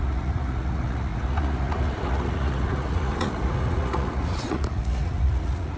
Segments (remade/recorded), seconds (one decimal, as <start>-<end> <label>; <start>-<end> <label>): 0.0-5.8 remade

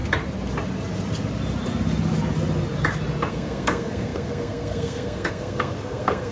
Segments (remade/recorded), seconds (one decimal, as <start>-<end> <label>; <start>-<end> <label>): 0.0-3.3 recorded; 3.3-6.3 remade

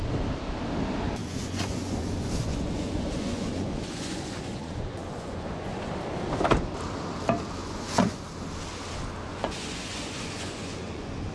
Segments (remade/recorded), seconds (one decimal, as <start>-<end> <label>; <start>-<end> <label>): 0.0-1.2 recorded; 1.2-5.9 remade; 5.9-7.6 recorded; 7.6-8.2 remade; 8.2-9.3 recorded; 9.3-11.3 remade